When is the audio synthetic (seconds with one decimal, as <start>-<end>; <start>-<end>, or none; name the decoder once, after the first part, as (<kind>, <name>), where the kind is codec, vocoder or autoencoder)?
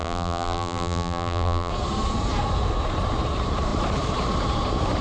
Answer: 0.0-1.7 (vocoder, BigVGAN v2)